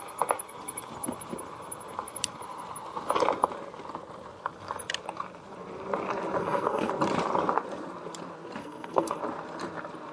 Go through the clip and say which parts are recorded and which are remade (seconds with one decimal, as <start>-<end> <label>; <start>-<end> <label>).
0.0-6.4 recorded; 6.4-6.9 remade; 6.9-8.6 recorded; 8.6-9.2 remade; 9.2-10.1 recorded